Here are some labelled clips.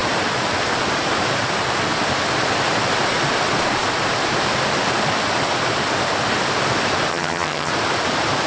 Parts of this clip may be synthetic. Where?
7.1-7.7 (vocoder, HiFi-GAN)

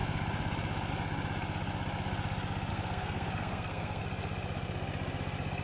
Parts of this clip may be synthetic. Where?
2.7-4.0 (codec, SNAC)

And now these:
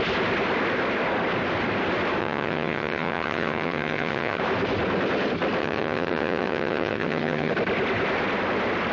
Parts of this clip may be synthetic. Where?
2.2-4.4 (vocoder, HiFi-GAN); 5.6-7.5

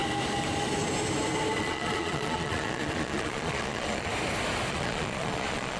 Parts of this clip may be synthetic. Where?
1.6-4.1 (vocoder, Vocos); 4.7-5.8

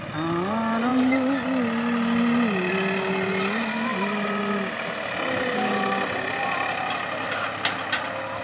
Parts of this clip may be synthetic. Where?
none

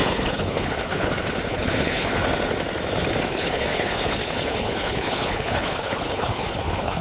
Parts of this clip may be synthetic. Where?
0.0-1.1 (codec, HILCodec); 1.5-2.1; 3.3-7.0

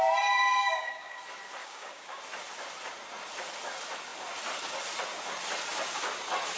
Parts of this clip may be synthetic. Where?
0.6-1.2 (codec, DAC); 1.6-2.2

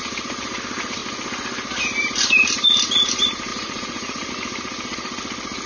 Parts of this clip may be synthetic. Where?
3.5-4.3 (vocoder, Vocos)